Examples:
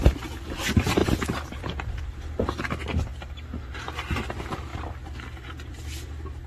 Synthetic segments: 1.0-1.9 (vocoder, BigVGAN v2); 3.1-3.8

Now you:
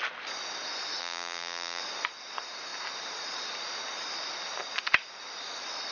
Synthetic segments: 1.0-1.8 (vocoder, BigVGAN v2)

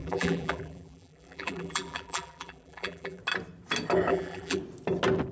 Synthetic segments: 0.0-3.2 (vocoder, BigVGAN v2); 4.1-4.6